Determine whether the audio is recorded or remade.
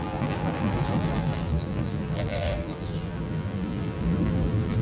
remade